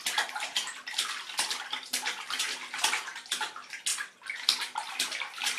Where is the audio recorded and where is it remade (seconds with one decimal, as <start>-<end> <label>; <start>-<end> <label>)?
0.0-2.4 remade; 2.4-3.9 recorded; 3.9-5.0 remade; 5.0-5.6 recorded